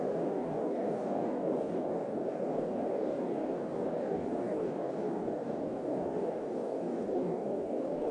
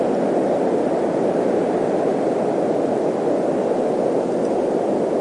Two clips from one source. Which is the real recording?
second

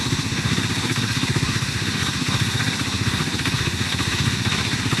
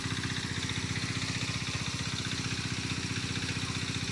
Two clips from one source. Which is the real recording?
second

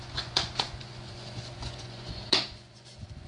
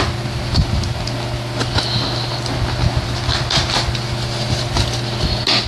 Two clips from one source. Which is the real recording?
second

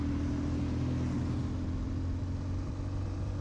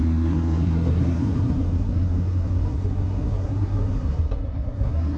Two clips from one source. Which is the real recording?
first